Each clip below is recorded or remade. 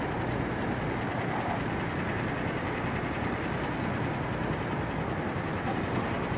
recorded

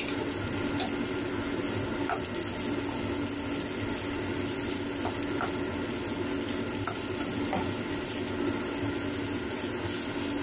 recorded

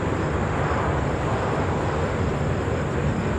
recorded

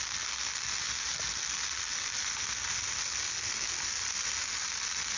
recorded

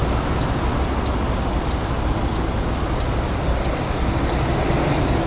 recorded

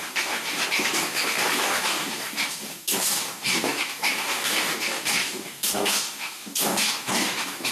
remade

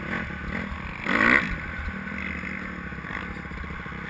recorded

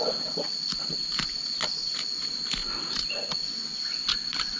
recorded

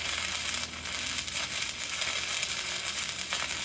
recorded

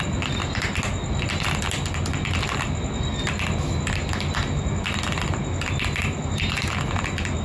recorded